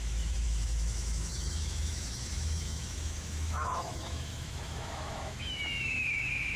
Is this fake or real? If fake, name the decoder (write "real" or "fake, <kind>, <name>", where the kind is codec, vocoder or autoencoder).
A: fake, autoencoder, DAC-VAE